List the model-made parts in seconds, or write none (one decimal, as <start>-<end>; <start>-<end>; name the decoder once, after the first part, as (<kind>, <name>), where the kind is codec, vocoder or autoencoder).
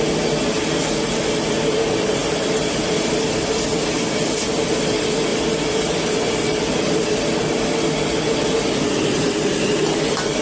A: 2.2-3.2 (vocoder, BigVGAN v2); 5.3-6.8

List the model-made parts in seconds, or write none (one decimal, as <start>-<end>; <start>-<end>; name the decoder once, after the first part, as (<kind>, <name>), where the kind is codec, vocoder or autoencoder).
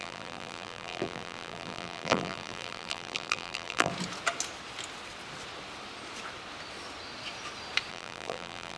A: 0.0-3.9 (vocoder, BigVGAN v2); 7.9-8.8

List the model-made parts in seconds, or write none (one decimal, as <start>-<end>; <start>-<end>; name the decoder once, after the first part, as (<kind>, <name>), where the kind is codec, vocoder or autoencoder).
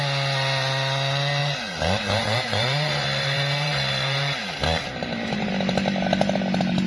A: 1.4-5.5 (vocoder, BigVGAN v2)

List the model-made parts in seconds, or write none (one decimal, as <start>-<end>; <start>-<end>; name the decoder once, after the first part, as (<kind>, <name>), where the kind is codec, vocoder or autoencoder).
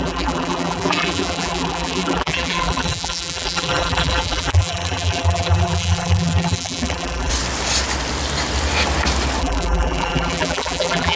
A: 0.0-7.3 (vocoder, BigVGAN v2); 9.4-11.2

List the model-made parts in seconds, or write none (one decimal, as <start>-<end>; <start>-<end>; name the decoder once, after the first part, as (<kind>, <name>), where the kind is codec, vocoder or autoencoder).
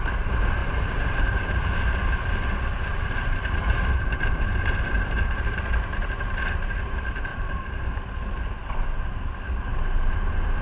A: 0.6-1.4 (vocoder, BigVGAN v2); 2.0-5.6; 7.3-7.8; 9.7-10.6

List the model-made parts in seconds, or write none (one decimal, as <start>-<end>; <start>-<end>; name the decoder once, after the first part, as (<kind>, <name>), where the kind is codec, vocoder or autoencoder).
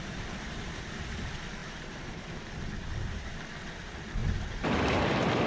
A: 1.6-2.3 (vocoder, BigVGAN v2); 4.2-5.1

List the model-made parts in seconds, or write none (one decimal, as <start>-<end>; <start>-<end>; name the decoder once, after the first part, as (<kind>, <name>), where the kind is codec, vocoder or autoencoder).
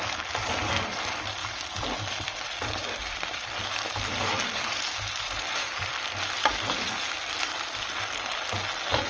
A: 1.4-5.9 (vocoder, BigVGAN v2)